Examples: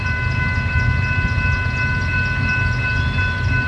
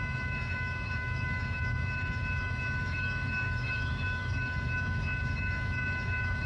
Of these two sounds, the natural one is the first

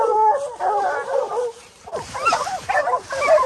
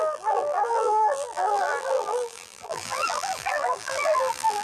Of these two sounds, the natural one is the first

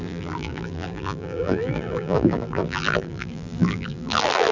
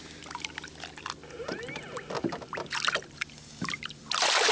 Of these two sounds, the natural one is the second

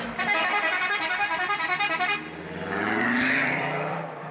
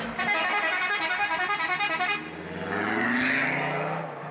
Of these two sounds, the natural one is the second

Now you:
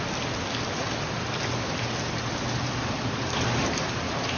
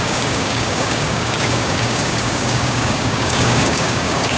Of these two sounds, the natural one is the first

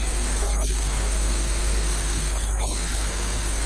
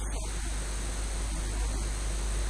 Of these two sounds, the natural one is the second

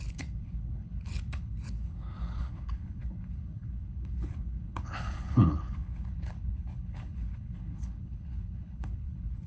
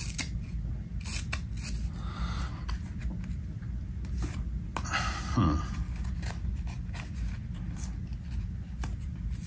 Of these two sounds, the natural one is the second